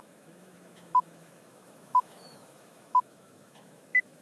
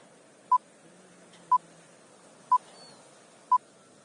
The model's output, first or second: first